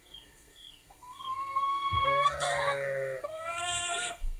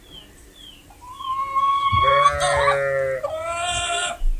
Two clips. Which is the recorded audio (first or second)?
second